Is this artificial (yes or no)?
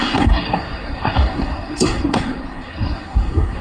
yes